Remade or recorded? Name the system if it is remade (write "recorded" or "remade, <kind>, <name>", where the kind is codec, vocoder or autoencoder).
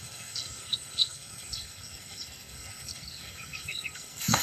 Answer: remade, codec, SNAC